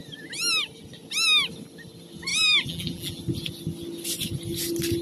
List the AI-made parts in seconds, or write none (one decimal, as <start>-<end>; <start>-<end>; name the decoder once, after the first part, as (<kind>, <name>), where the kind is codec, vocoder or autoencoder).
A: 2.3-3.2 (vocoder, BigVGAN v2)